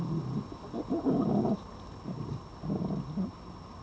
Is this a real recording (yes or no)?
yes